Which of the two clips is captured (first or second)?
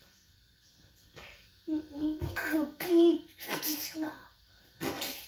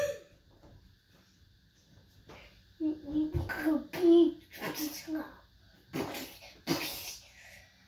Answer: second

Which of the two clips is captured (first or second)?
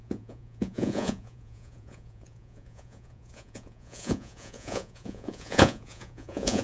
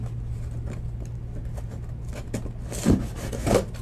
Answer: second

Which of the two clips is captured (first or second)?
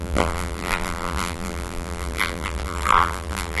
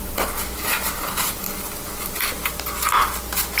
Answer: second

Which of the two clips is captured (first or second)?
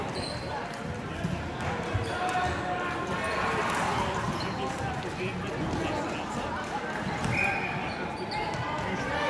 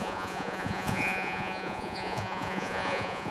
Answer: first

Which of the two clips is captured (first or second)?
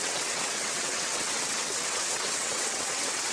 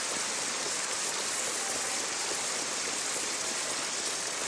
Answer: second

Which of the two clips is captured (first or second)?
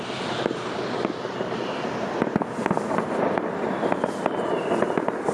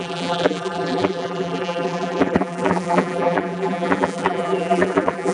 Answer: first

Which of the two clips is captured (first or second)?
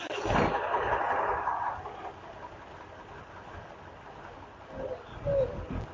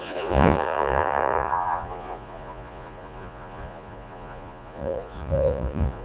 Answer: first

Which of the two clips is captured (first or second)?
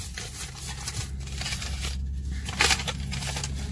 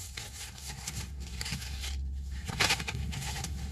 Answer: first